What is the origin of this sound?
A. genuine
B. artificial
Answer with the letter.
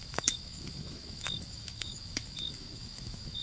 B